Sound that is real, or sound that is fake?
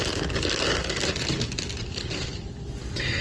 real